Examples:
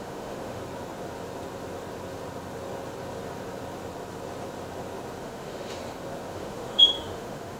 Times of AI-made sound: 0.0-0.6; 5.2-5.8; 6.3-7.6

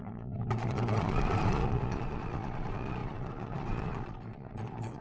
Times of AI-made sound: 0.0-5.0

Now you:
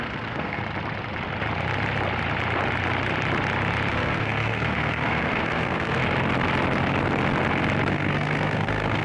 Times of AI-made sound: 0.0-0.6; 3.9-6.0; 7.9-9.0

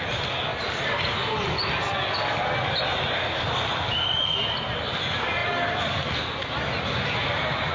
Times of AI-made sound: none

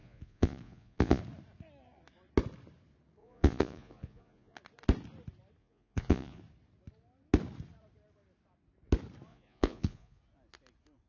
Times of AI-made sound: 0.0-1.2; 3.2-4.6; 5.6-6.4; 9.3-10.2